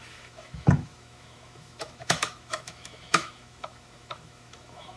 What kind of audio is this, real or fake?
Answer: fake